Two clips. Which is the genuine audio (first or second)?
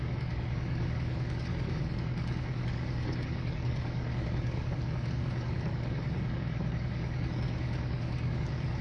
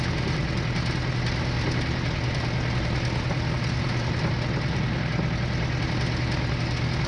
second